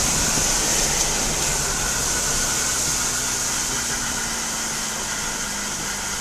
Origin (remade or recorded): recorded